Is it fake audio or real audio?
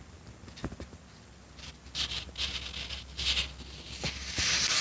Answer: real